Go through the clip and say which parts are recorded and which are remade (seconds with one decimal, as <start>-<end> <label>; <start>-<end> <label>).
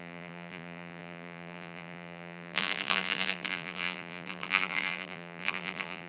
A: 0.0-6.1 remade